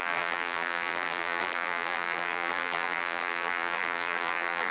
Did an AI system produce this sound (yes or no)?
yes